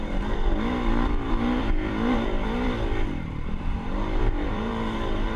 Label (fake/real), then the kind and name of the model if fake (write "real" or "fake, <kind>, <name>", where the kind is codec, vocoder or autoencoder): fake, vocoder, BigVGAN v2